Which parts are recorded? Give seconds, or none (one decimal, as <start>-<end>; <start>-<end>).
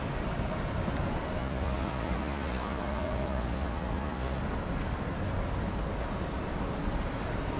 0.0-1.4; 4.4-7.6